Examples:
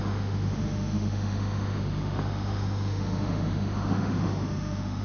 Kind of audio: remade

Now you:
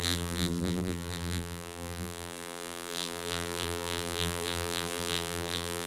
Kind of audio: remade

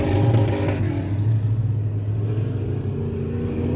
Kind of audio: recorded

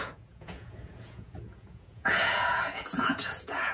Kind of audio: remade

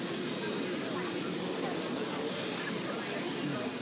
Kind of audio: recorded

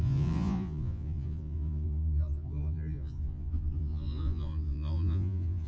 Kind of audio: remade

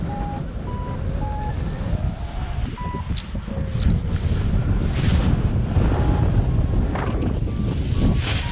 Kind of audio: recorded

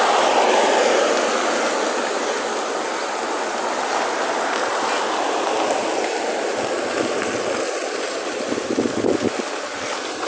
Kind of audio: recorded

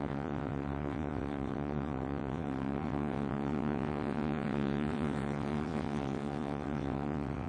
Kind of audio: remade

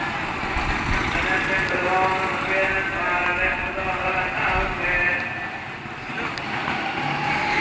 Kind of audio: recorded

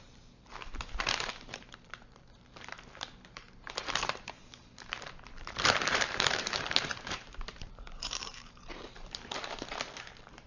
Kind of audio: remade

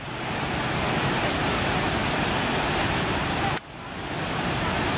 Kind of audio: recorded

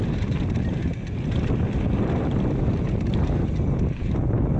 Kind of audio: recorded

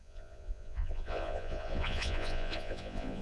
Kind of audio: remade